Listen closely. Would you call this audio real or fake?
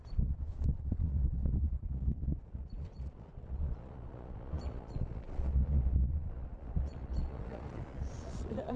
fake